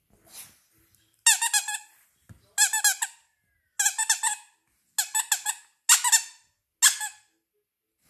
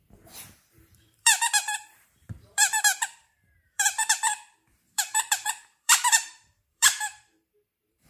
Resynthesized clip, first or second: second